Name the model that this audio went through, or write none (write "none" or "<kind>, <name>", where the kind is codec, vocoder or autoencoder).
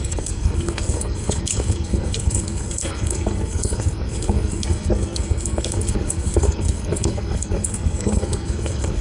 codec, SNAC